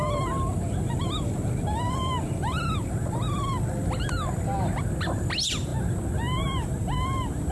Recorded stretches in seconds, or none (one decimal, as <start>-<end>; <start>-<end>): 0.0-7.5